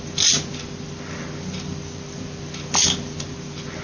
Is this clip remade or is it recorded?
recorded